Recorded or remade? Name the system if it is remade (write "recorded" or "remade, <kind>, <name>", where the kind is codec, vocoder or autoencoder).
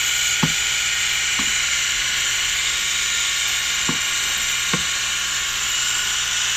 recorded